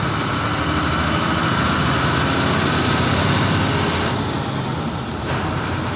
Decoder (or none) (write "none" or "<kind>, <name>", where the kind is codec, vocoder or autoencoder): none